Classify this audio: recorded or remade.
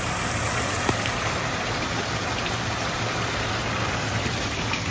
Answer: recorded